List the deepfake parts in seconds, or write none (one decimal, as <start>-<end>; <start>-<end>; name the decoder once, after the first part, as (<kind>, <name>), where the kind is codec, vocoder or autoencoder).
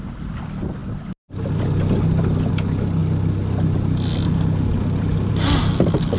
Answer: none